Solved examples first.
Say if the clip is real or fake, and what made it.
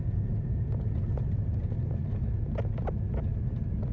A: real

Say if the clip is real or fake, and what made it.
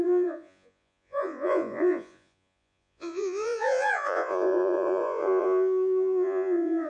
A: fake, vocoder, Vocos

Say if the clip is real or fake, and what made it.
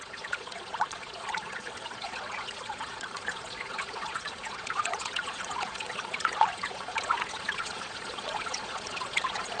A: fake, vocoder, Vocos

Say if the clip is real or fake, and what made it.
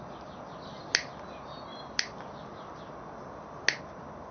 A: real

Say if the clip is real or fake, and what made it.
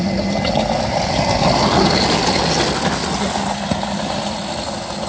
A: real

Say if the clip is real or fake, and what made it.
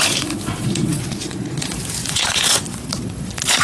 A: fake, vocoder, Vocos